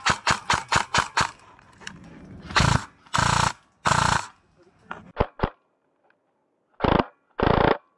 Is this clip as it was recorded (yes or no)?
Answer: yes